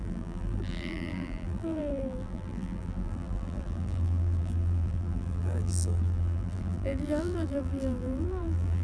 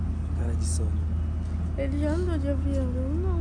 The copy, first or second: first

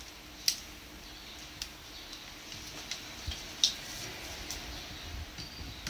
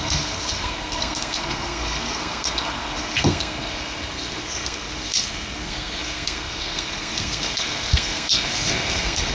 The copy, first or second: second